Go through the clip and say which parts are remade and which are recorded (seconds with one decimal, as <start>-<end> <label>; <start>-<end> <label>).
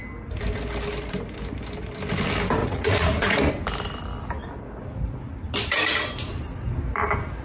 0.0-2.6 recorded; 2.6-3.5 remade; 3.5-7.4 recorded